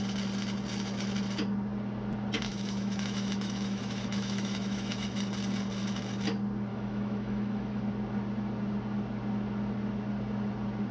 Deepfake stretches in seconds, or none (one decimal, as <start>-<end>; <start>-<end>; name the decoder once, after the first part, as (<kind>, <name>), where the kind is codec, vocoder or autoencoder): 2.5-5.2 (autoencoder, DAC-VAE); 6.7-7.8

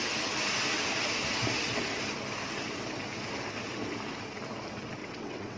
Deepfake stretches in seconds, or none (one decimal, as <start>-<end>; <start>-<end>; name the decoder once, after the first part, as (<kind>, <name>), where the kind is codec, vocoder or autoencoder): 5.0-5.6 (vocoder, WaveNeXt)

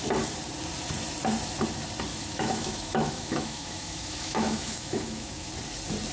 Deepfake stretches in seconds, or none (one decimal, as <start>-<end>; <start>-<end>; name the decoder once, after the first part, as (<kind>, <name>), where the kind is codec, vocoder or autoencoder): 2.1-5.5 (autoencoder, DAC-VAE)

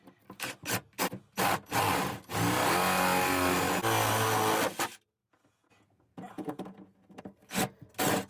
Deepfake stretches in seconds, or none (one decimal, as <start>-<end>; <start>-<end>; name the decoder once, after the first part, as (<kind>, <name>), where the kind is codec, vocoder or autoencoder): 5.2-7.2 (vocoder, Vocos)

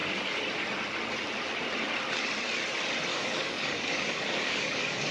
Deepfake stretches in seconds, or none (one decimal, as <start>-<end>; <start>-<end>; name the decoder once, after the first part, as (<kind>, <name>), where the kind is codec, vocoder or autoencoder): 3.1-5.1 (codec, DAC)

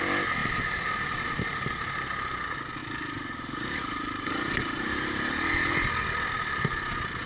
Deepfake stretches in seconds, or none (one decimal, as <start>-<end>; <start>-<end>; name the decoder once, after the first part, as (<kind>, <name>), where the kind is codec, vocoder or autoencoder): 0.4-2.0 (vocoder, BigVGAN v2); 2.8-5.4